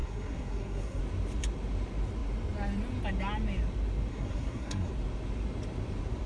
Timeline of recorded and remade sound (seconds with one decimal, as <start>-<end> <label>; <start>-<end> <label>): 0.0-1.0 remade; 1.0-4.1 recorded; 4.1-4.9 remade; 4.9-6.3 recorded